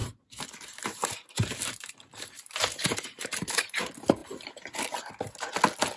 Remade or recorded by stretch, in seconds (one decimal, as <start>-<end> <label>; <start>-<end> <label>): 0.0-3.6 remade; 3.6-6.0 recorded